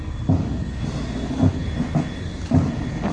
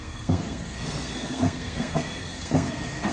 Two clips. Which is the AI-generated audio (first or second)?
second